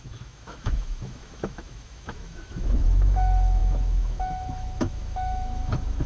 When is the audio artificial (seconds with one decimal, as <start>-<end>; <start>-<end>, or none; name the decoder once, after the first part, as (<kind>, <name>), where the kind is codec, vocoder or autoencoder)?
0.0-6.1 (autoencoder, DAC-VAE)